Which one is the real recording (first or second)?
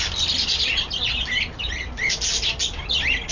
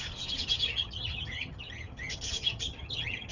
first